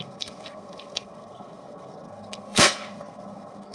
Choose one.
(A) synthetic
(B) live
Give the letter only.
A